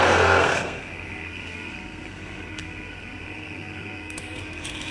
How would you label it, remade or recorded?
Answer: remade